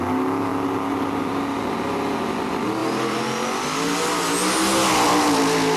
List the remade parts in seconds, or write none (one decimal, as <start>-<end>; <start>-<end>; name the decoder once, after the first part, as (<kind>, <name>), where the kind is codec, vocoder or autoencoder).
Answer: none